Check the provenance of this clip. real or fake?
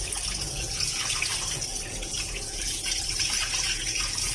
fake